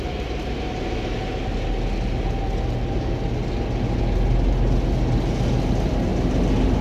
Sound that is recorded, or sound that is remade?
recorded